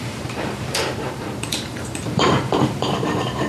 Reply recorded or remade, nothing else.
remade